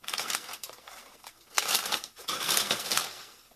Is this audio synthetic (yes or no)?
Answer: yes